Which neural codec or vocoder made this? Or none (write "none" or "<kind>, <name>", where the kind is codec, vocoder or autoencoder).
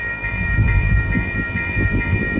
vocoder, BigVGAN v2